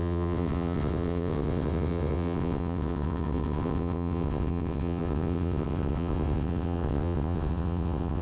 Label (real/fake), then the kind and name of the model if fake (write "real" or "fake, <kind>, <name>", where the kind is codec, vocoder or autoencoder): fake, vocoder, WaveNeXt